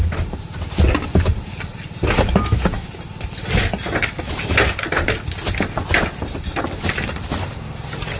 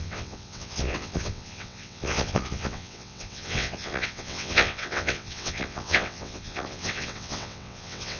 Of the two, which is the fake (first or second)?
second